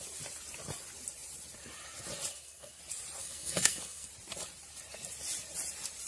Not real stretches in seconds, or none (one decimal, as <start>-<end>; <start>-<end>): 2.3-2.8; 3.2-4.1